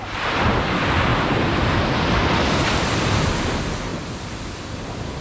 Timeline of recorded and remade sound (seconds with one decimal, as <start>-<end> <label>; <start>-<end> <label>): 0.0-1.1 recorded; 1.1-1.7 remade; 1.7-5.2 recorded